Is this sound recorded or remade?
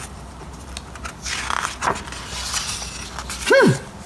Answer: recorded